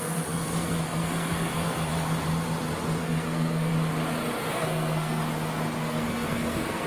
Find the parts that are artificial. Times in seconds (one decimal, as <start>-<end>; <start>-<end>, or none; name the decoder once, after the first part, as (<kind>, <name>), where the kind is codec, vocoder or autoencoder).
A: 0.0-1.9 (codec, SNAC); 3.0-3.7; 4.5-5.2; 5.8-6.9